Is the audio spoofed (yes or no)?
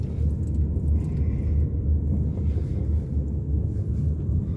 no